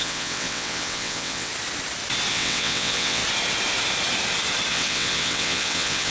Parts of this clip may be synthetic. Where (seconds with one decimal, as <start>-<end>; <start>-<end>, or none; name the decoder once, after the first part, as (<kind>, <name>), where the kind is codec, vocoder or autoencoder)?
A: 0.0-1.5 (vocoder, WaveNeXt); 2.3-3.2; 4.7-6.1